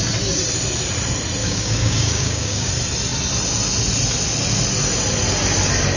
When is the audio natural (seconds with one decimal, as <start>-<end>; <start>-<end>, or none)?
0.0-1.4; 2.7-6.0